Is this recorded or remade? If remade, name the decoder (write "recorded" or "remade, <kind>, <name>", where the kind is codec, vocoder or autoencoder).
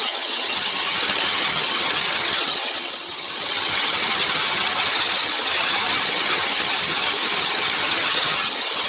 remade, vocoder, HiFi-GAN